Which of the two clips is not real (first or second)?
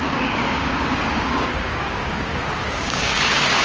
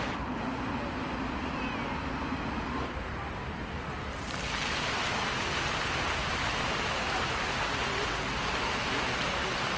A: first